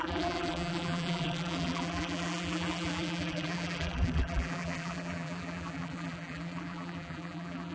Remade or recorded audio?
remade